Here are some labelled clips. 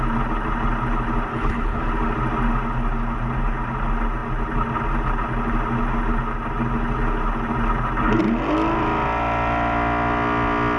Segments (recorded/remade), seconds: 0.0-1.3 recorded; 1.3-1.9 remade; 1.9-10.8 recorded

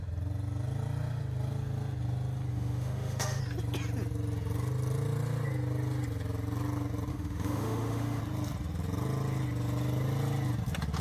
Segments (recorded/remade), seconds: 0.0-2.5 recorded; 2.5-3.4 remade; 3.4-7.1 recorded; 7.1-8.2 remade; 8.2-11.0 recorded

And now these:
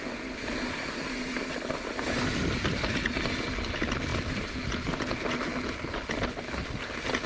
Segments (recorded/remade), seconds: 0.0-7.3 recorded